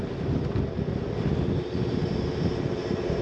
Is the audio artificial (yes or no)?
no